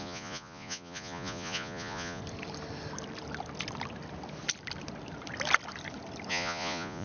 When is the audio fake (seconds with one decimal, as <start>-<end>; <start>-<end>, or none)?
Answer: 0.0-2.2; 6.3-7.0